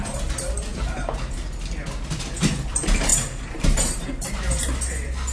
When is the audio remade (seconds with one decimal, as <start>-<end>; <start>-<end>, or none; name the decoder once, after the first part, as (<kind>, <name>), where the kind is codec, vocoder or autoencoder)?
0.7-1.3 (vocoder, BigVGAN v2); 3.1-4.3